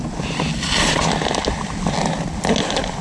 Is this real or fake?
real